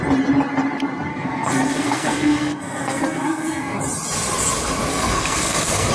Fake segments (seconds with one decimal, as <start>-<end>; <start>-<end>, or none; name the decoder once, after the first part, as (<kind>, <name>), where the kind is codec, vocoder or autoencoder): 1.1-3.8 (codec, SNAC); 4.9-5.9